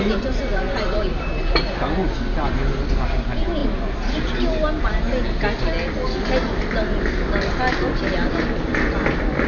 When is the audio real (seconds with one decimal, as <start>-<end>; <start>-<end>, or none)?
0.0-9.5